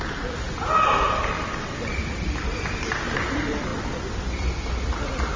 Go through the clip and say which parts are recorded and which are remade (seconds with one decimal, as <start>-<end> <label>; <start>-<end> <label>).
0.0-5.4 recorded